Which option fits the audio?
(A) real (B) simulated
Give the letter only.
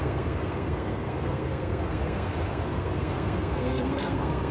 B